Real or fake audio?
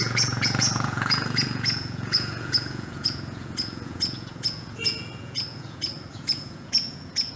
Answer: fake